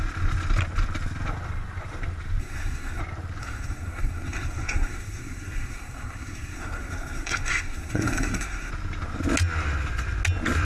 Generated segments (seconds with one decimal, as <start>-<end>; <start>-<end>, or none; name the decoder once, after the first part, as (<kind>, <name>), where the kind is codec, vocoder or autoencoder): 2.4-3.0 (codec, SNAC); 3.4-8.7